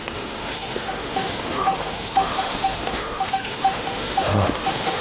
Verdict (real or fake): fake